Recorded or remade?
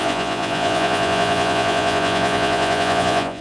remade